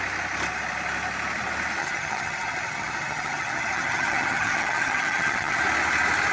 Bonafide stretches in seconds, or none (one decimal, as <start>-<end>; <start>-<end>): 0.0-1.8; 5.6-6.3